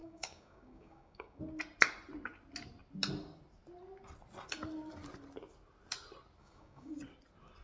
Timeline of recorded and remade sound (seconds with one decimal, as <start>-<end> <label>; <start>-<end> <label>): 0.0-1.4 remade; 1.4-6.4 recorded; 6.4-6.9 remade; 6.9-7.6 recorded